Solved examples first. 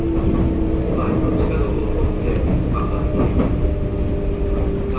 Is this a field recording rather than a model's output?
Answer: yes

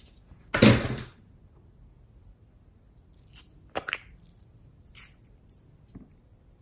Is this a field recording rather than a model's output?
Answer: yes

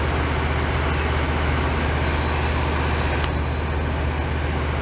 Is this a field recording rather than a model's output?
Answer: yes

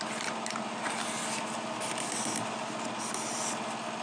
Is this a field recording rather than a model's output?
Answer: yes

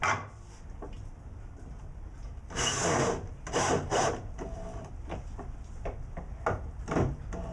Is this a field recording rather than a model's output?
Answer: yes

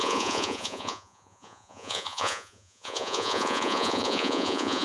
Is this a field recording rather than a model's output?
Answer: no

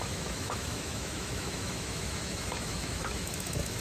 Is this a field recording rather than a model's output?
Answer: no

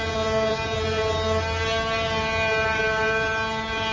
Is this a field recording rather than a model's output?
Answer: yes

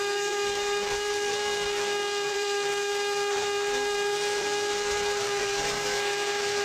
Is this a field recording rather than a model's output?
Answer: no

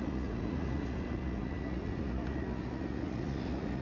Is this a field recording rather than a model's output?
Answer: no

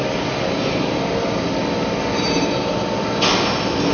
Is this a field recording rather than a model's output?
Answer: yes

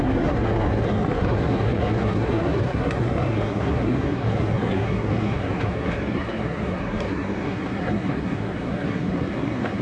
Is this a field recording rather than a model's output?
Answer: no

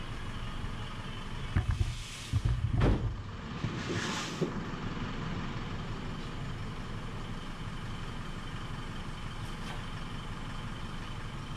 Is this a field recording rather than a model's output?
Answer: yes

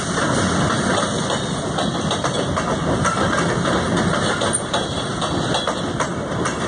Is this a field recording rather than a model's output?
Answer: yes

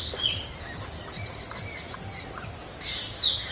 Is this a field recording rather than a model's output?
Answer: yes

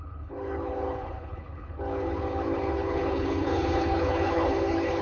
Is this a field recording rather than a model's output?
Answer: no